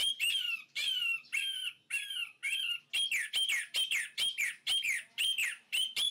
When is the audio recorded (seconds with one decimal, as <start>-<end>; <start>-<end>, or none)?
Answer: 2.4-3.3